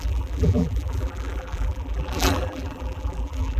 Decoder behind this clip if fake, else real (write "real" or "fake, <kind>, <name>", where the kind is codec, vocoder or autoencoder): fake, vocoder, BigVGAN v2